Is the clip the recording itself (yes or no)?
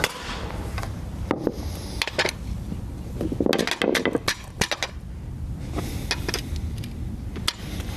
yes